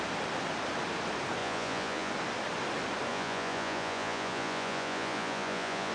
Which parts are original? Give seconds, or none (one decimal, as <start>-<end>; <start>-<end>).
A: 0.0-1.4; 2.1-3.1